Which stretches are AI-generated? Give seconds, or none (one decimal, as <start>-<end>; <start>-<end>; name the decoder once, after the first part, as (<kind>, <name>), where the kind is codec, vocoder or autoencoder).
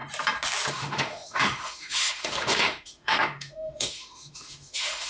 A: 0.7-5.1 (autoencoder, DAC-VAE)